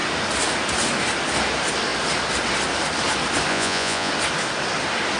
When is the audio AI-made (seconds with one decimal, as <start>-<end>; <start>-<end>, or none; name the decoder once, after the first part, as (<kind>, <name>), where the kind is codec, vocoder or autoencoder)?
3.5-4.1 (vocoder, Vocos)